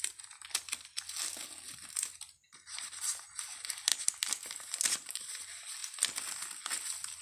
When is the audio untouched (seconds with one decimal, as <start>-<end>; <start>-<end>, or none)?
0.0-3.9; 5.3-7.2